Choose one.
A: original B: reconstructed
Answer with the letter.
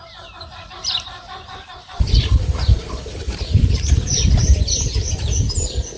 B